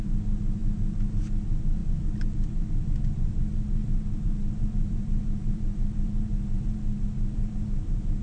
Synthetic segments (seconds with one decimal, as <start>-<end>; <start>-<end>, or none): 3.8-8.2